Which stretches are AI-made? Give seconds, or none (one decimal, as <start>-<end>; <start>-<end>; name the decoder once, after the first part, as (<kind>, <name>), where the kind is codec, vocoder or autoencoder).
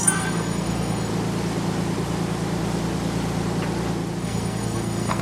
0.0-1.1 (codec, SNAC); 4.2-5.2